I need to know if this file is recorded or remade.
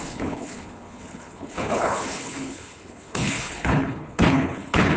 remade